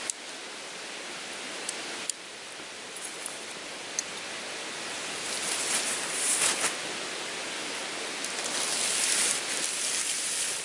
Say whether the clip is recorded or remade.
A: recorded